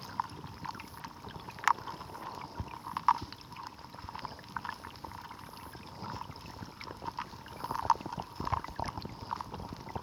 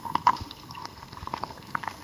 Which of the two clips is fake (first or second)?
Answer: second